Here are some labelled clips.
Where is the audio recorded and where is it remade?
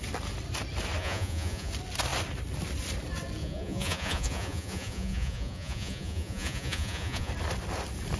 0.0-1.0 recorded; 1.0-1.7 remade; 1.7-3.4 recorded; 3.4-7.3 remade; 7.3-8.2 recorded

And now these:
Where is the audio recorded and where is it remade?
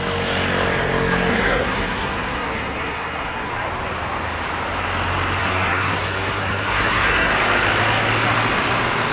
0.0-1.3 recorded; 1.3-3.5 remade; 3.5-5.4 recorded; 5.4-7.3 remade; 7.3-9.1 recorded